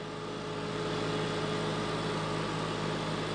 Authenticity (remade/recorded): recorded